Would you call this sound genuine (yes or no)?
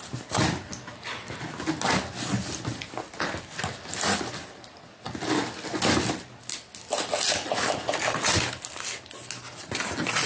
yes